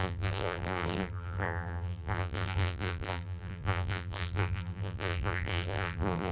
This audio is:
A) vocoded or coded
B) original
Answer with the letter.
A